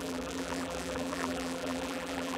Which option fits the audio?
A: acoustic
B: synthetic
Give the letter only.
B